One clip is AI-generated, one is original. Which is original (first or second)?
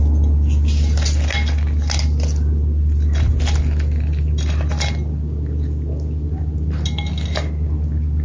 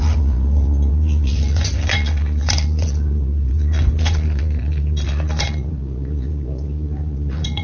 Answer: first